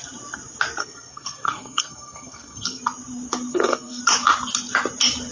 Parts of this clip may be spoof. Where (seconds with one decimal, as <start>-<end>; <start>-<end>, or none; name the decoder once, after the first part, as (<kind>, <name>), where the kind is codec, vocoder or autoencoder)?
0.8-2.8 (codec, SNAC); 3.5-4.0